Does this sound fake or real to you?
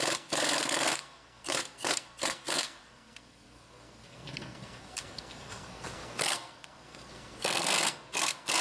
fake